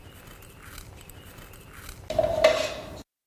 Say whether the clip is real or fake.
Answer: real